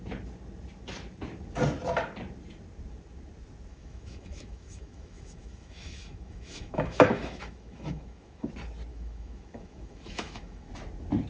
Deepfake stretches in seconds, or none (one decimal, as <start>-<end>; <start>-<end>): 3.7-8.5; 8.9-10.7